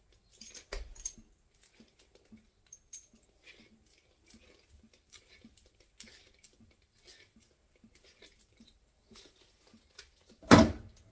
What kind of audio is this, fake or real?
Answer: real